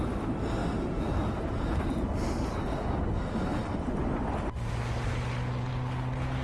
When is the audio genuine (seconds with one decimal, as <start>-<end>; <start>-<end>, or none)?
0.0-6.4